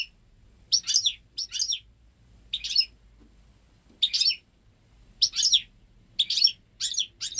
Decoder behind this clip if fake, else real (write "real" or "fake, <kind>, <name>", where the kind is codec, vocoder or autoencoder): real